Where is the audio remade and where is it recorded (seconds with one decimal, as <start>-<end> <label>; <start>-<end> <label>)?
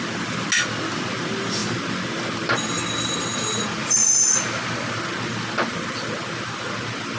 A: 0.0-7.2 recorded